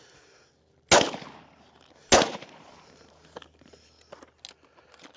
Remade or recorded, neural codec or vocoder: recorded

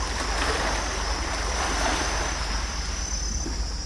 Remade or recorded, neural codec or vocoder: recorded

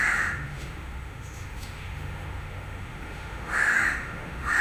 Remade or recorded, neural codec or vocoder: remade, autoencoder, DAC-VAE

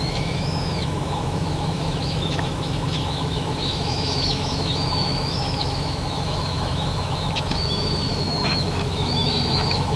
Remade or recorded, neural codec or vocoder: remade, autoencoder, DAC-VAE